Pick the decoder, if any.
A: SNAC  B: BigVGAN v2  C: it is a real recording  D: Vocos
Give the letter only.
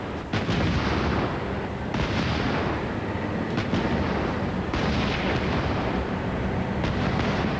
C